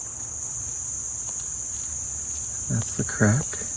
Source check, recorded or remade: recorded